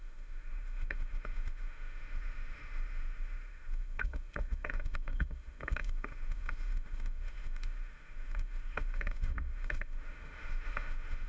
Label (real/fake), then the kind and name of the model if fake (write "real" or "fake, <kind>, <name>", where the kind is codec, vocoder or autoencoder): fake, autoencoder, DAC-VAE